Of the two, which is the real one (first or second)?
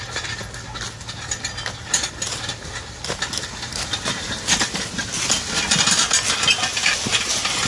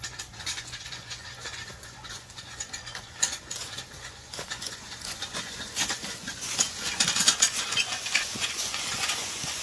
first